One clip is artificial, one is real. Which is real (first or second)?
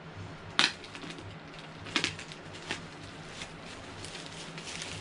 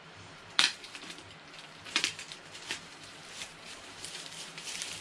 first